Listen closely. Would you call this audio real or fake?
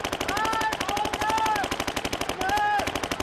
real